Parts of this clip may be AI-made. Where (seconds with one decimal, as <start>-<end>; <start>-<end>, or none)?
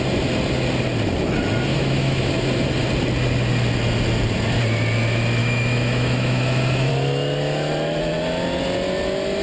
1.7-2.3; 5.4-6.9